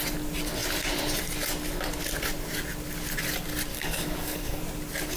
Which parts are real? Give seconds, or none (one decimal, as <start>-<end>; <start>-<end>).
0.0-3.7; 4.6-5.2

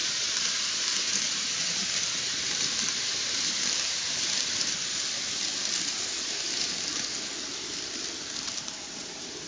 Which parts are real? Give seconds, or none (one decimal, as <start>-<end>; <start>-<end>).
4.9-6.2; 6.9-8.4

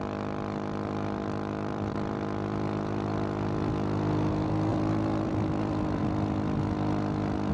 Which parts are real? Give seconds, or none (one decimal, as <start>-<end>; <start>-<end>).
0.0-1.2; 2.1-4.7; 6.0-7.5

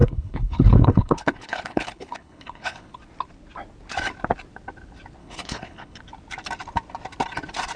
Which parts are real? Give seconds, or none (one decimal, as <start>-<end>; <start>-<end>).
3.0-5.2; 6.0-7.8

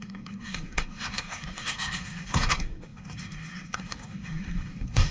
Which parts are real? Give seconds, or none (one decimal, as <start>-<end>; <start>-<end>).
none

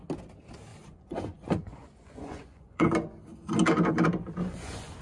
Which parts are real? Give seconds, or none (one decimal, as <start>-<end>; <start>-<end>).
0.0-0.7; 2.9-4.4

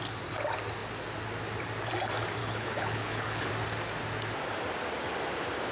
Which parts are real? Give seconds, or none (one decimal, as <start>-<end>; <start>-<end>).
0.0-2.4; 3.5-5.7

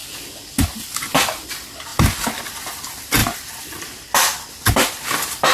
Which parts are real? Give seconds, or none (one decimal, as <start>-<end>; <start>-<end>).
0.0-5.5